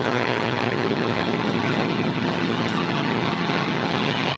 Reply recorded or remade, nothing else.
remade